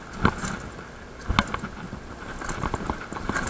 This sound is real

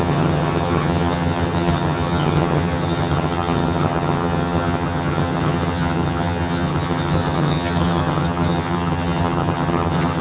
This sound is fake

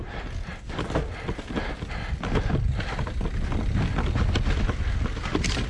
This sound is real